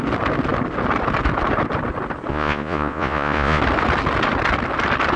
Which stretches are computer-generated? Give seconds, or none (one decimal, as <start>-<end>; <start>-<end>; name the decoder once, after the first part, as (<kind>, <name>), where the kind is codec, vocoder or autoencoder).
2.3-3.6 (vocoder, Vocos)